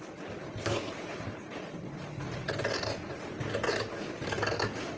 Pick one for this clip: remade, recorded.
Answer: recorded